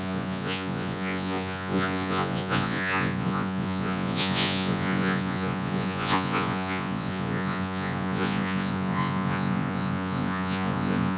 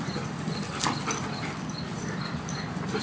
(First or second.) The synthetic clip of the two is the first